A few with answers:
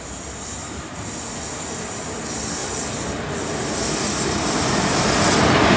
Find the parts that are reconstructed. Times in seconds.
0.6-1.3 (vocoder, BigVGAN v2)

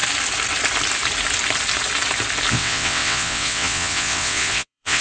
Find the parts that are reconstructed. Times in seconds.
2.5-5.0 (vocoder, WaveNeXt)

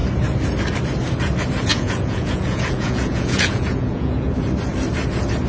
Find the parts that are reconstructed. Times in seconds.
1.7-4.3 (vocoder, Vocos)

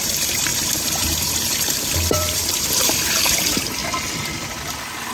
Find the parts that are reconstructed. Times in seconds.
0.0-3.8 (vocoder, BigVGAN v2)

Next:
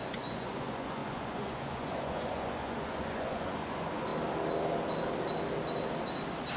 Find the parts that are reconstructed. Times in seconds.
0.0-4.1 (vocoder, Vocos)